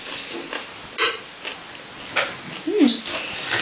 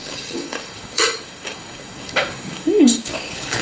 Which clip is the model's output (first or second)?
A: second